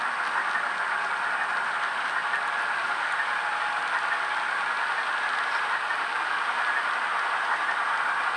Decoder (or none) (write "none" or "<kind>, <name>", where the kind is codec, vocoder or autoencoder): none